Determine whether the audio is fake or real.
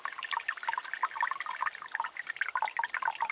real